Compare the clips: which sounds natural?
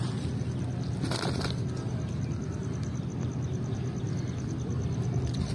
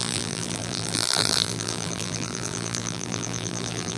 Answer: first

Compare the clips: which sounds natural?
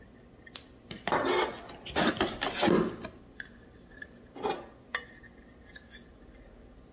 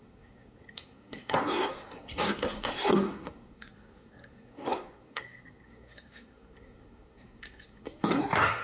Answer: first